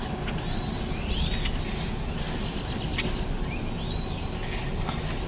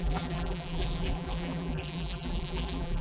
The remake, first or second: second